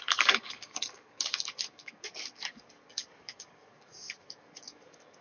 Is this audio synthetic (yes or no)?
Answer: yes